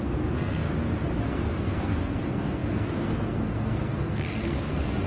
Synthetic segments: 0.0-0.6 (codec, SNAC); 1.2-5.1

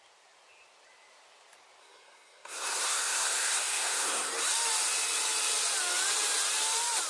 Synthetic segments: 1.8-4.3 (codec, SNAC)

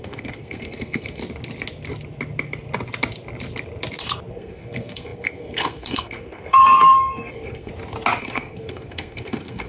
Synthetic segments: 0.0-1.2 (codec, SNAC); 4.3-7.7; 8.2-9.7